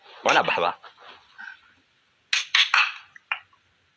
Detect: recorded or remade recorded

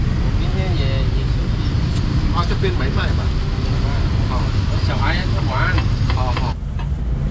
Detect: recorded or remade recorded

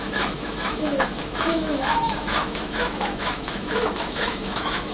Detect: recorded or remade remade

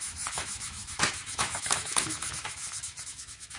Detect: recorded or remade remade